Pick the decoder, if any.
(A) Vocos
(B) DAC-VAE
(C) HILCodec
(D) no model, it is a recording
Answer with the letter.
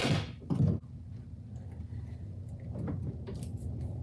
D